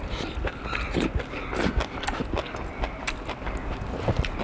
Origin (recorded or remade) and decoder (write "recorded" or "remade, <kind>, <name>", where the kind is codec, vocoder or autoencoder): recorded